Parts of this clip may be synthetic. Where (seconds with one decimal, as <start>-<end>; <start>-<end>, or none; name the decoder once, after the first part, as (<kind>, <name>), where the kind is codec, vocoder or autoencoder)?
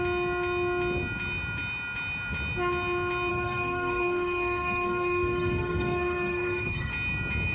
3.3-6.9 (codec, SNAC)